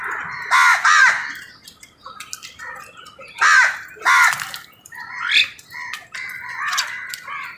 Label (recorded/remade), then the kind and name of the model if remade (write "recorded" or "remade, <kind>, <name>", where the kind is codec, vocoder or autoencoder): recorded